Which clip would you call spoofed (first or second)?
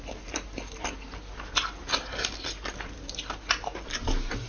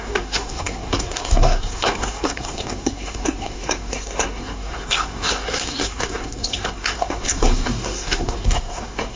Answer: second